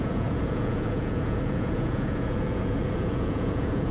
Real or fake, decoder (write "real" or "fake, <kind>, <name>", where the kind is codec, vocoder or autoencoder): fake, vocoder, Vocos